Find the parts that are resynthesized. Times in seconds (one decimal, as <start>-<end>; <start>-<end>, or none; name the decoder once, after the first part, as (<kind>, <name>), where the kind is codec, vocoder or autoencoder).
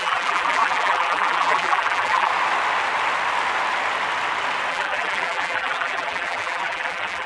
0.0-2.3 (vocoder, BigVGAN v2); 4.7-7.3